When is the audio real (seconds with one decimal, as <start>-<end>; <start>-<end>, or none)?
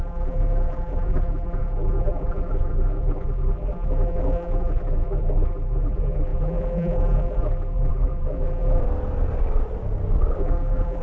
8.8-10.4